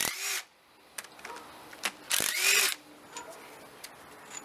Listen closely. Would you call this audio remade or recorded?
recorded